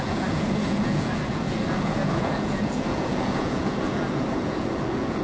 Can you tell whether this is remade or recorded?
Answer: remade